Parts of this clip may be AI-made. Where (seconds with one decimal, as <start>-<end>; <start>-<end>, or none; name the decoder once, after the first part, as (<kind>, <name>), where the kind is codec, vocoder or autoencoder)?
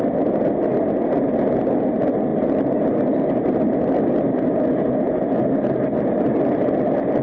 none